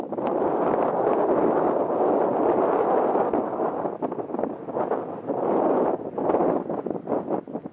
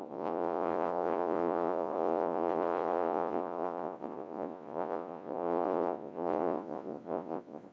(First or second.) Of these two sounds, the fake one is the second